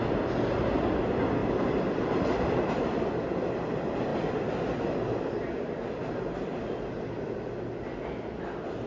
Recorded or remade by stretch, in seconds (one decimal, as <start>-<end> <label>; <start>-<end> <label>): 0.0-8.9 recorded